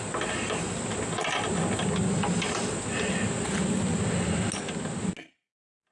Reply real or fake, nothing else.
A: real